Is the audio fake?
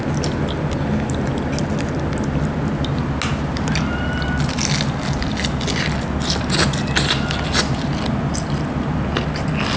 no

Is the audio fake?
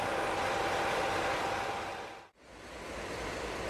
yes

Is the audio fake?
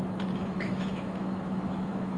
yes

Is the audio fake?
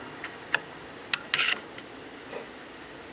no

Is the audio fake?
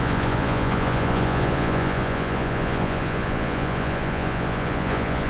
yes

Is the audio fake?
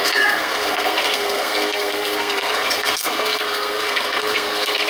yes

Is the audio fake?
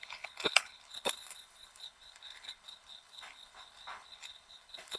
yes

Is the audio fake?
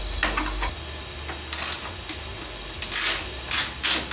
no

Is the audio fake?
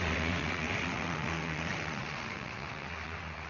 yes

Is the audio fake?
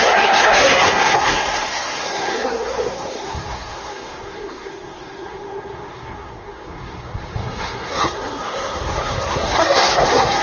yes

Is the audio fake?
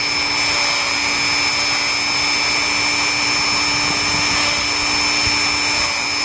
no